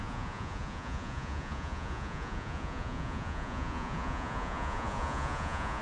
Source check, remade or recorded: remade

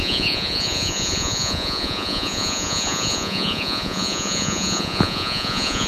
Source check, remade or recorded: remade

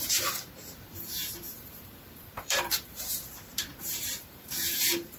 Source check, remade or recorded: remade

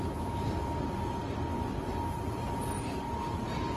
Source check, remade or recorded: recorded